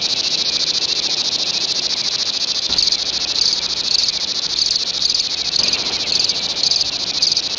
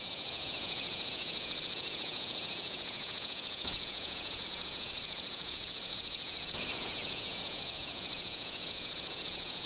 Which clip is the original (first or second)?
first